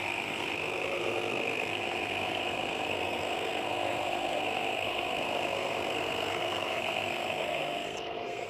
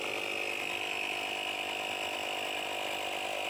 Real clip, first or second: second